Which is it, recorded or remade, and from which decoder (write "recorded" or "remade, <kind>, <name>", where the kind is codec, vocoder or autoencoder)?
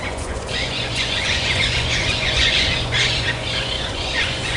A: remade, vocoder, Vocos